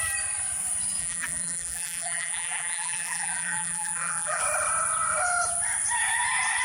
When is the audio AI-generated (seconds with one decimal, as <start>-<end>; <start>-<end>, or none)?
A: 1.0-4.4